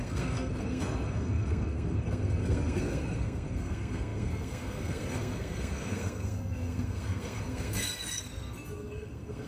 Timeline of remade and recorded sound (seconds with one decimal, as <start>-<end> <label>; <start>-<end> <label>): 0.0-9.5 remade